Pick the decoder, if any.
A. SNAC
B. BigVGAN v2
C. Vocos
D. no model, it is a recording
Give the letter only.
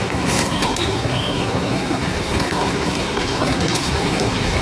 A